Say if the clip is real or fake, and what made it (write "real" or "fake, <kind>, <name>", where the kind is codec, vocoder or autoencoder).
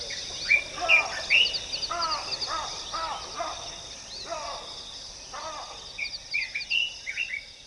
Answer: real